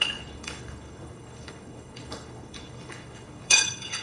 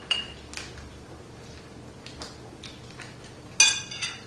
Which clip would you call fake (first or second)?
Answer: first